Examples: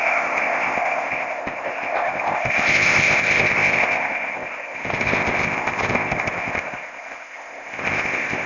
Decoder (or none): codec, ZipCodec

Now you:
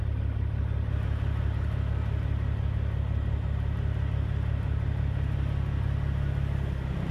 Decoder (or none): none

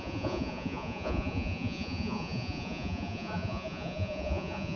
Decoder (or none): vocoder, Vocos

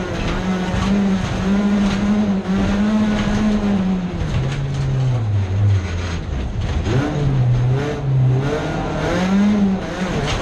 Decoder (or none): none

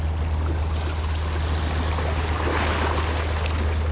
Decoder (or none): none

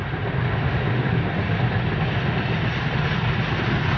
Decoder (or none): none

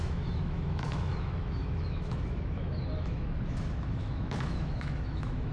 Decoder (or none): autoencoder, DAC-VAE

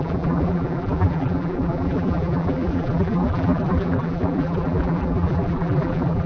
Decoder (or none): vocoder, BigVGAN v2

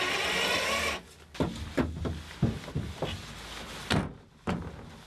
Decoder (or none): none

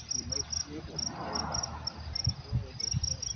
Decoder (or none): none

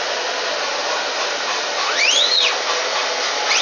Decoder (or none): none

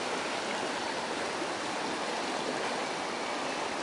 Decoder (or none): none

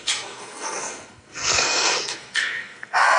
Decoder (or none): codec, SNAC